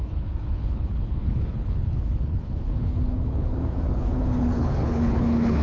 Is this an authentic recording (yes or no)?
no